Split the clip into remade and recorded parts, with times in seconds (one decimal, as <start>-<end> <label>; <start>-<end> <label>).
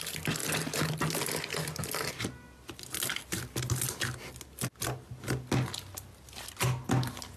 0.0-7.4 recorded